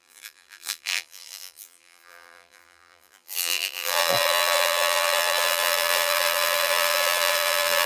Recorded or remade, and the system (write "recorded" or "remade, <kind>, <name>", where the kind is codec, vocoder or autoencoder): remade, vocoder, BigVGAN v2